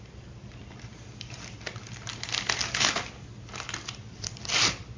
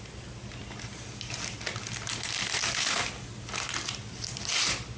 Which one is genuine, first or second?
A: second